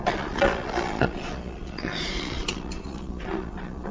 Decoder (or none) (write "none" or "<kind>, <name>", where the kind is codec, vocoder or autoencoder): vocoder, Vocos